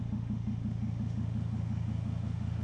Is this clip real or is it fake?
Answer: fake